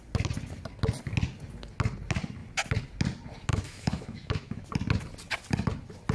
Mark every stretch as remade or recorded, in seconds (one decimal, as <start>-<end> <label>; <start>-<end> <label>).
0.0-3.5 recorded; 3.5-4.6 remade; 4.6-6.1 recorded

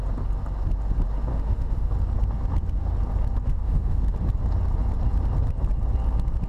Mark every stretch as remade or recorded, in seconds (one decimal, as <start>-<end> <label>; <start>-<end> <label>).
0.0-1.3 recorded; 1.3-1.9 remade; 1.9-3.5 recorded; 3.5-4.0 remade; 4.0-6.5 recorded

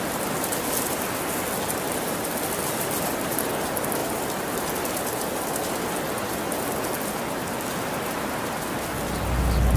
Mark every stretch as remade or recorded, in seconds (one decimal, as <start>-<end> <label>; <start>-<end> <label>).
0.0-9.8 recorded